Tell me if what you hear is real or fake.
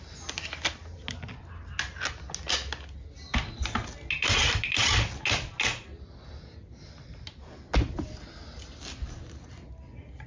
real